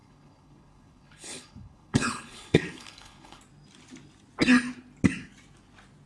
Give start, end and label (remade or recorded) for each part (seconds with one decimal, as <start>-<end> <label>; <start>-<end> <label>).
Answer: 0.0-3.4 remade; 3.4-6.1 recorded